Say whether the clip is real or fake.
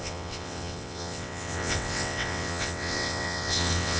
fake